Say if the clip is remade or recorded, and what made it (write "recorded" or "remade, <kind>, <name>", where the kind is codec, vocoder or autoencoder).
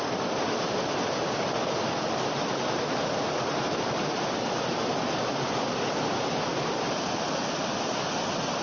recorded